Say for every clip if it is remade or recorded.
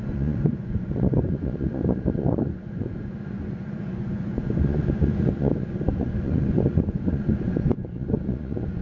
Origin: remade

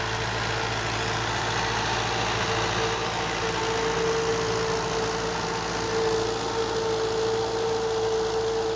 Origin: recorded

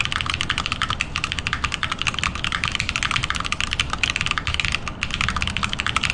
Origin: recorded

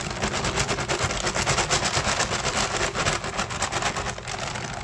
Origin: recorded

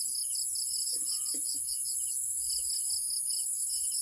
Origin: recorded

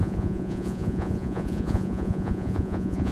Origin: remade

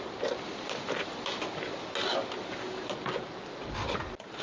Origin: recorded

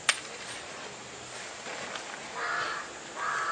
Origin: recorded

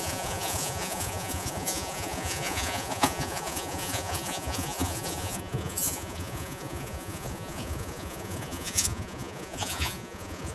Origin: remade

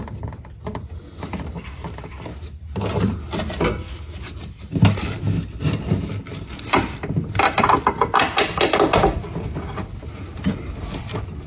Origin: recorded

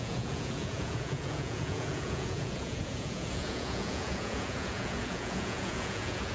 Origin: remade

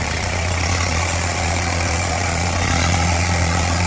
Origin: remade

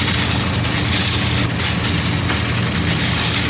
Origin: recorded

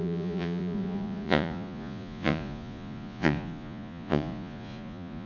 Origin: remade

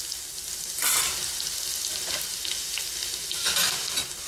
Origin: recorded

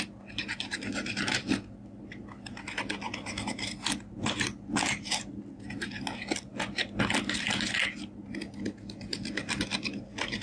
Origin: recorded